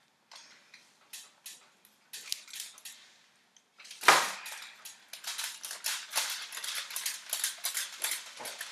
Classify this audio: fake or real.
real